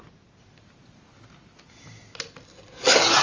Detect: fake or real real